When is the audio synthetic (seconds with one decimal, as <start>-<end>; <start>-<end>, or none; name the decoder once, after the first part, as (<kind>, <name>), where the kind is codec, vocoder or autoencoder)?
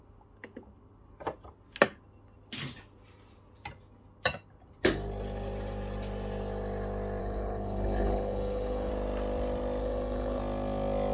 7.2-8.9 (codec, HILCodec); 9.8-10.4